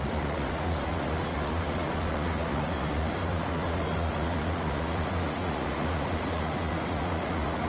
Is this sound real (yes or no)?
no